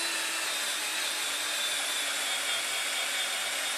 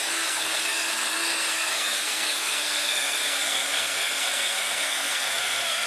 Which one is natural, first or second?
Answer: first